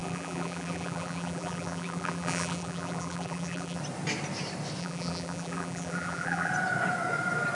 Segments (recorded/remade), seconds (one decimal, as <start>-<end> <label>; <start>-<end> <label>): 0.0-3.8 remade; 3.8-4.8 recorded; 4.8-6.5 remade; 6.5-7.5 recorded